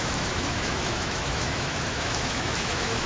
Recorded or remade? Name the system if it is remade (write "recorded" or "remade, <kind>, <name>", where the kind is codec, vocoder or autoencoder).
remade, autoencoder, DAC-VAE